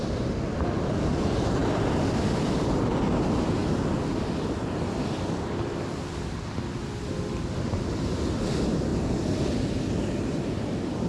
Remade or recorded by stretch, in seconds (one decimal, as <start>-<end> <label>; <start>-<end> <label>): 0.0-1.6 recorded; 1.6-2.9 remade; 2.9-8.9 recorded; 8.9-11.1 remade